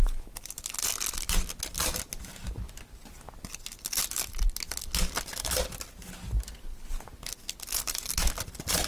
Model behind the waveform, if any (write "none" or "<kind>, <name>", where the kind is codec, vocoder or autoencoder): none